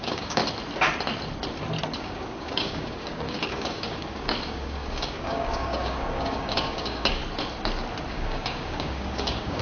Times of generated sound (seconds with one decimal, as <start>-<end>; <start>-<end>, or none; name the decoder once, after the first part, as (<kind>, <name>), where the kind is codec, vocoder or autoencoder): 0.0-0.4 (codec, DAC); 2.0-7.2; 8.1-9.6